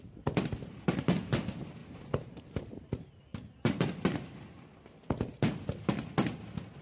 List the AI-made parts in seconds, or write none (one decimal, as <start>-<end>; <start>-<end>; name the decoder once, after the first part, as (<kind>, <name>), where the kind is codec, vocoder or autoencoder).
1.8-2.5 (vocoder, BigVGAN v2)